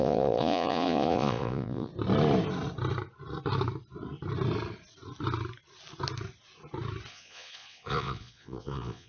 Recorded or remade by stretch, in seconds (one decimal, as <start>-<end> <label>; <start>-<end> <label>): 0.0-1.9 remade; 1.9-7.1 recorded; 7.1-9.1 remade